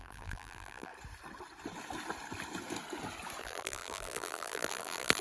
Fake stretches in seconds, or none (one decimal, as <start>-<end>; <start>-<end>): 0.0-0.9; 3.4-5.2